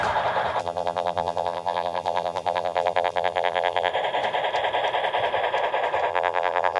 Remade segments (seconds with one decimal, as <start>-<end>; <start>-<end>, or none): 0.6-3.9; 6.1-6.8